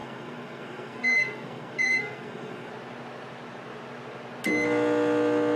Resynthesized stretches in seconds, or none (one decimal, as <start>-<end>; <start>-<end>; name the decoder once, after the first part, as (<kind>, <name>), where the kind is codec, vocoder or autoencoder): 0.0-2.7 (codec, SNAC)